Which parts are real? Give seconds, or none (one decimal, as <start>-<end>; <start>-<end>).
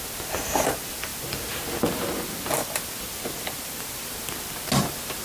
0.0-5.2